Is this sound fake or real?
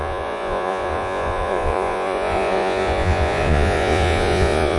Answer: fake